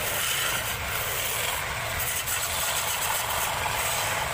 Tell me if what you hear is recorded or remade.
recorded